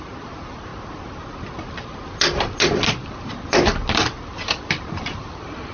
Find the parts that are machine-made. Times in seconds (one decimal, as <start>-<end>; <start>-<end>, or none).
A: 0.0-0.7; 3.3-5.7